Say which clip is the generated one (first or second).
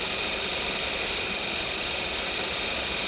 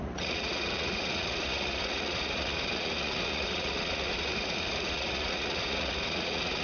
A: second